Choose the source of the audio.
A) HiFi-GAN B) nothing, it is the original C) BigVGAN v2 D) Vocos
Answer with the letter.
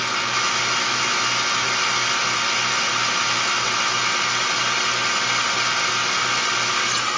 B